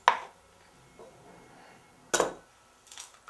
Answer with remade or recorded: recorded